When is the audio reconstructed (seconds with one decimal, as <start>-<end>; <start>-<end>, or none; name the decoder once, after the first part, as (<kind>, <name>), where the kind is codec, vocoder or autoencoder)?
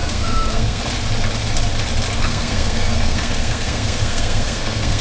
0.0-0.8 (codec, SNAC); 2.2-5.0